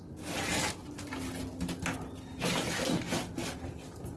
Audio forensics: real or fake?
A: real